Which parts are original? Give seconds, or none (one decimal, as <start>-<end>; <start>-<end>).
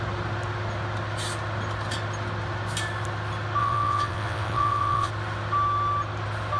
0.0-3.6; 5.1-6.6